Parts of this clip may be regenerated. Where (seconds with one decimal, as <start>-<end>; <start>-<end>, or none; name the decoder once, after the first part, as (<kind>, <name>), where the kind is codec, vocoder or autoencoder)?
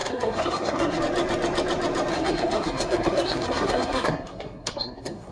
0.0-1.0 (codec, SNAC); 2.1-5.3